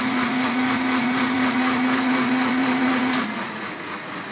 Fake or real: fake